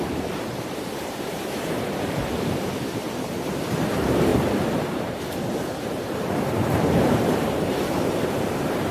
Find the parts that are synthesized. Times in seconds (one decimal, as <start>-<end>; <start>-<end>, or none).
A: 0.0-4.3; 4.8-8.9